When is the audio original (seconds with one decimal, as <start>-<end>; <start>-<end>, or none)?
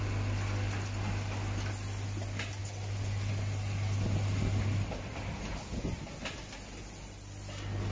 0.0-7.9